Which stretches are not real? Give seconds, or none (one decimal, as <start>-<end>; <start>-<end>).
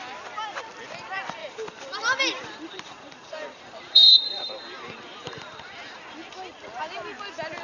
1.4-6.0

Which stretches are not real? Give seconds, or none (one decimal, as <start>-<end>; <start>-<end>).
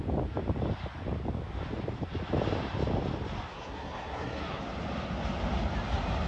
3.5-4.6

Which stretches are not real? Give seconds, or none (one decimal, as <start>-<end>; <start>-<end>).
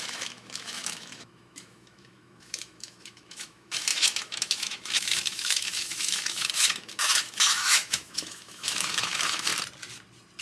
0.0-9.5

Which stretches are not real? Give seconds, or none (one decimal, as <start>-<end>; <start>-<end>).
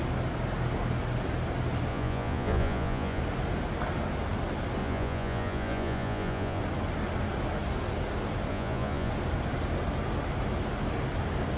1.9-3.2; 4.8-6.6; 8.5-9.1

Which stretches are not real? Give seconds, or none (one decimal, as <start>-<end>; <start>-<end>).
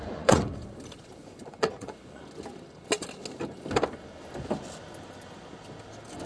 0.0-0.6; 1.2-2.2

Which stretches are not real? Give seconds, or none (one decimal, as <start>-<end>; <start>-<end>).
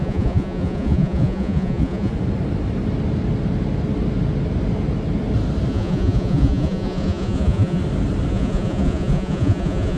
0.0-2.1; 5.7-7.8; 8.3-10.0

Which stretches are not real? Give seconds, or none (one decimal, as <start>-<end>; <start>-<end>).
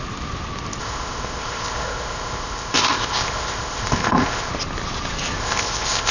0.8-4.5; 5.4-6.1